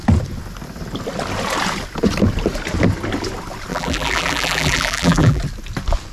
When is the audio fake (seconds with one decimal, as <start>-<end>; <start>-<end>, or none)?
3.7-5.4